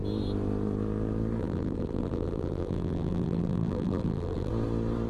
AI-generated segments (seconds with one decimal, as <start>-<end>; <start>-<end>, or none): 1.4-4.5